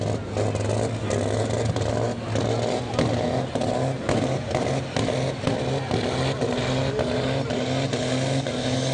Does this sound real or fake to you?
real